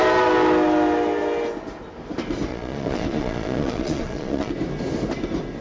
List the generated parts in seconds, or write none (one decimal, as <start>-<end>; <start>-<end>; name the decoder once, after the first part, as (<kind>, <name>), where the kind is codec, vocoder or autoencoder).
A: 2.5-4.5 (vocoder, Vocos)